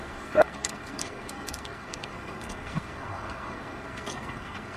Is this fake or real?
fake